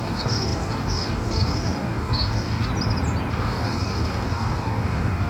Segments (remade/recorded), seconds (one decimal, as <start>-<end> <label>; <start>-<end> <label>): 0.0-2.7 remade; 2.7-3.3 recorded; 3.3-5.3 remade